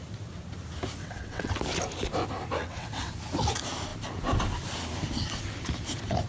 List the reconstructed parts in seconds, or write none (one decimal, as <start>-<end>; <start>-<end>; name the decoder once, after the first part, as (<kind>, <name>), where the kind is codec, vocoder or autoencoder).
1.0-1.5 (vocoder, WaveNeXt); 2.6-3.1